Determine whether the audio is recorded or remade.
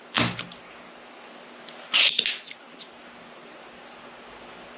recorded